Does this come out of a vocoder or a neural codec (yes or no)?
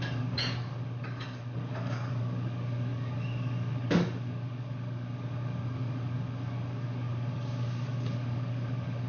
yes